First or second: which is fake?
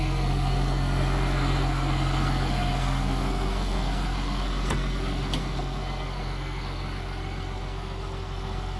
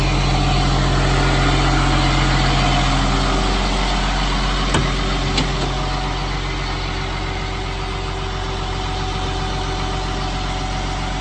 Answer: first